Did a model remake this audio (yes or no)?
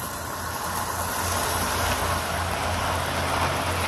no